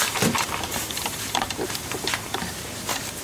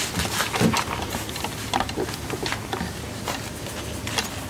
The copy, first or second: first